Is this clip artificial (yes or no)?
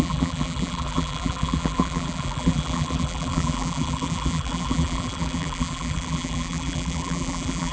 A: yes